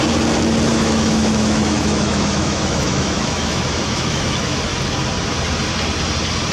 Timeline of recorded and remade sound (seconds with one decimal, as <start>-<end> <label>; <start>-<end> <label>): 0.0-0.7 recorded; 0.7-4.6 remade; 4.6-6.5 recorded